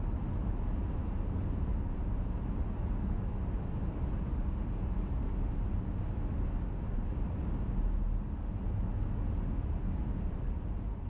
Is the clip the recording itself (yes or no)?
yes